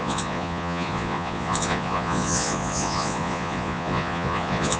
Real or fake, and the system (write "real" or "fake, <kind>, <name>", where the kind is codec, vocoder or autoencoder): fake, vocoder, Vocos